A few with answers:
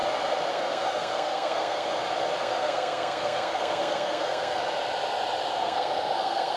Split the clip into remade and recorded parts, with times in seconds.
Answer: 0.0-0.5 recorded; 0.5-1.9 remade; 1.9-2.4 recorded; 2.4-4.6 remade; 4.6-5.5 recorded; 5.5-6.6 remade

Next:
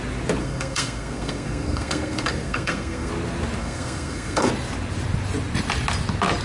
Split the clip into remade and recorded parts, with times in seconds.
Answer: 0.0-0.4 recorded; 0.4-3.1 remade; 3.1-3.6 recorded; 3.6-4.5 remade; 4.5-6.4 recorded

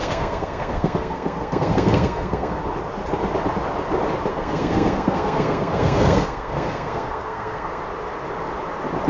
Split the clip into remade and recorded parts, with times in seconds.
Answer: 0.0-2.6 remade; 2.6-4.3 recorded; 4.3-7.8 remade; 7.8-9.1 recorded